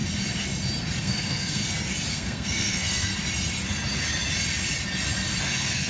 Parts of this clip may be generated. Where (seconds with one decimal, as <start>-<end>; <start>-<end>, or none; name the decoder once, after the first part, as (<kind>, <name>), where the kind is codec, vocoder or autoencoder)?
1.0-1.6 (codec, SNAC); 2.1-3.1; 5.4-5.9